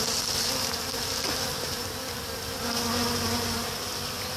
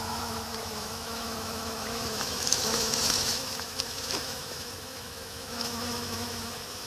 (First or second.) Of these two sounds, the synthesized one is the second